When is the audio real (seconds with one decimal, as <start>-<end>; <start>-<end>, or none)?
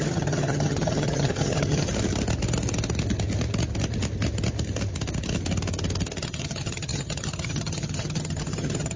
1.9-6.2